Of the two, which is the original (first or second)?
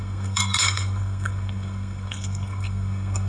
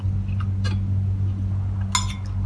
second